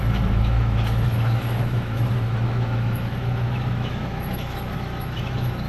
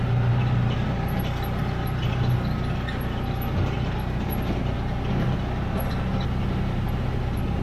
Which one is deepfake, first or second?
first